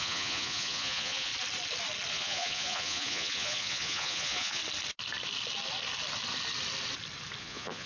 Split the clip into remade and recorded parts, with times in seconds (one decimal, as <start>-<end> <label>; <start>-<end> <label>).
0.0-1.3 remade; 1.3-2.1 recorded; 2.1-4.6 remade; 4.6-7.4 recorded; 7.4-7.9 remade